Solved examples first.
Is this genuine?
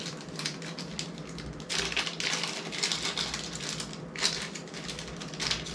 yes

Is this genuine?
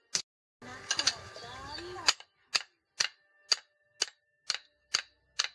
yes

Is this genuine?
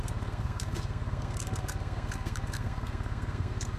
no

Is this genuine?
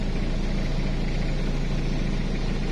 yes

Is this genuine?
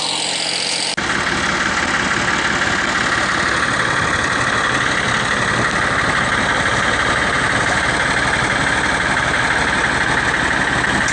yes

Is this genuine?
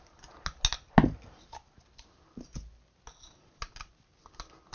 yes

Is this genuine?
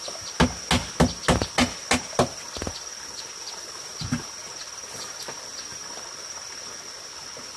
yes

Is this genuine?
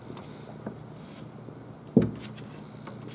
yes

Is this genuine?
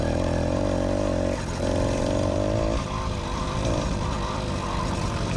no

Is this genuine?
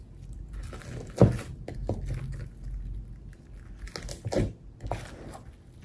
yes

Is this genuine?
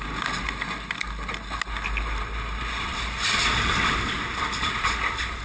yes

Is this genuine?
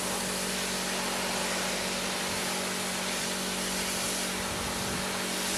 yes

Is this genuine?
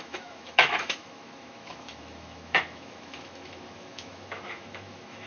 no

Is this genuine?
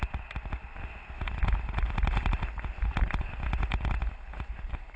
yes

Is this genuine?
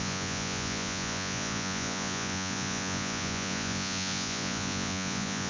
no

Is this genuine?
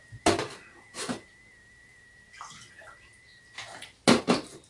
yes